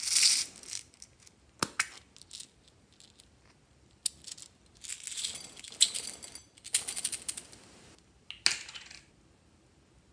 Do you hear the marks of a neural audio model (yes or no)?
no